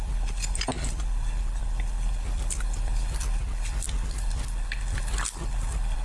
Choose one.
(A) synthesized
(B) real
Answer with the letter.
B